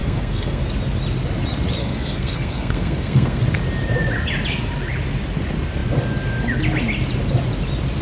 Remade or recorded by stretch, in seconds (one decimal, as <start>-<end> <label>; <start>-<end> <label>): 0.0-0.6 remade; 0.6-1.8 recorded; 1.8-3.4 remade; 3.4-8.0 recorded